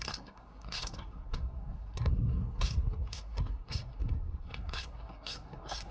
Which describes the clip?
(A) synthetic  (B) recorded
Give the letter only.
A